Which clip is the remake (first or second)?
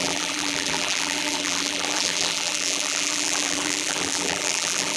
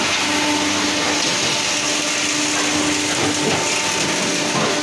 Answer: first